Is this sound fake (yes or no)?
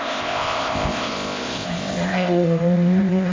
yes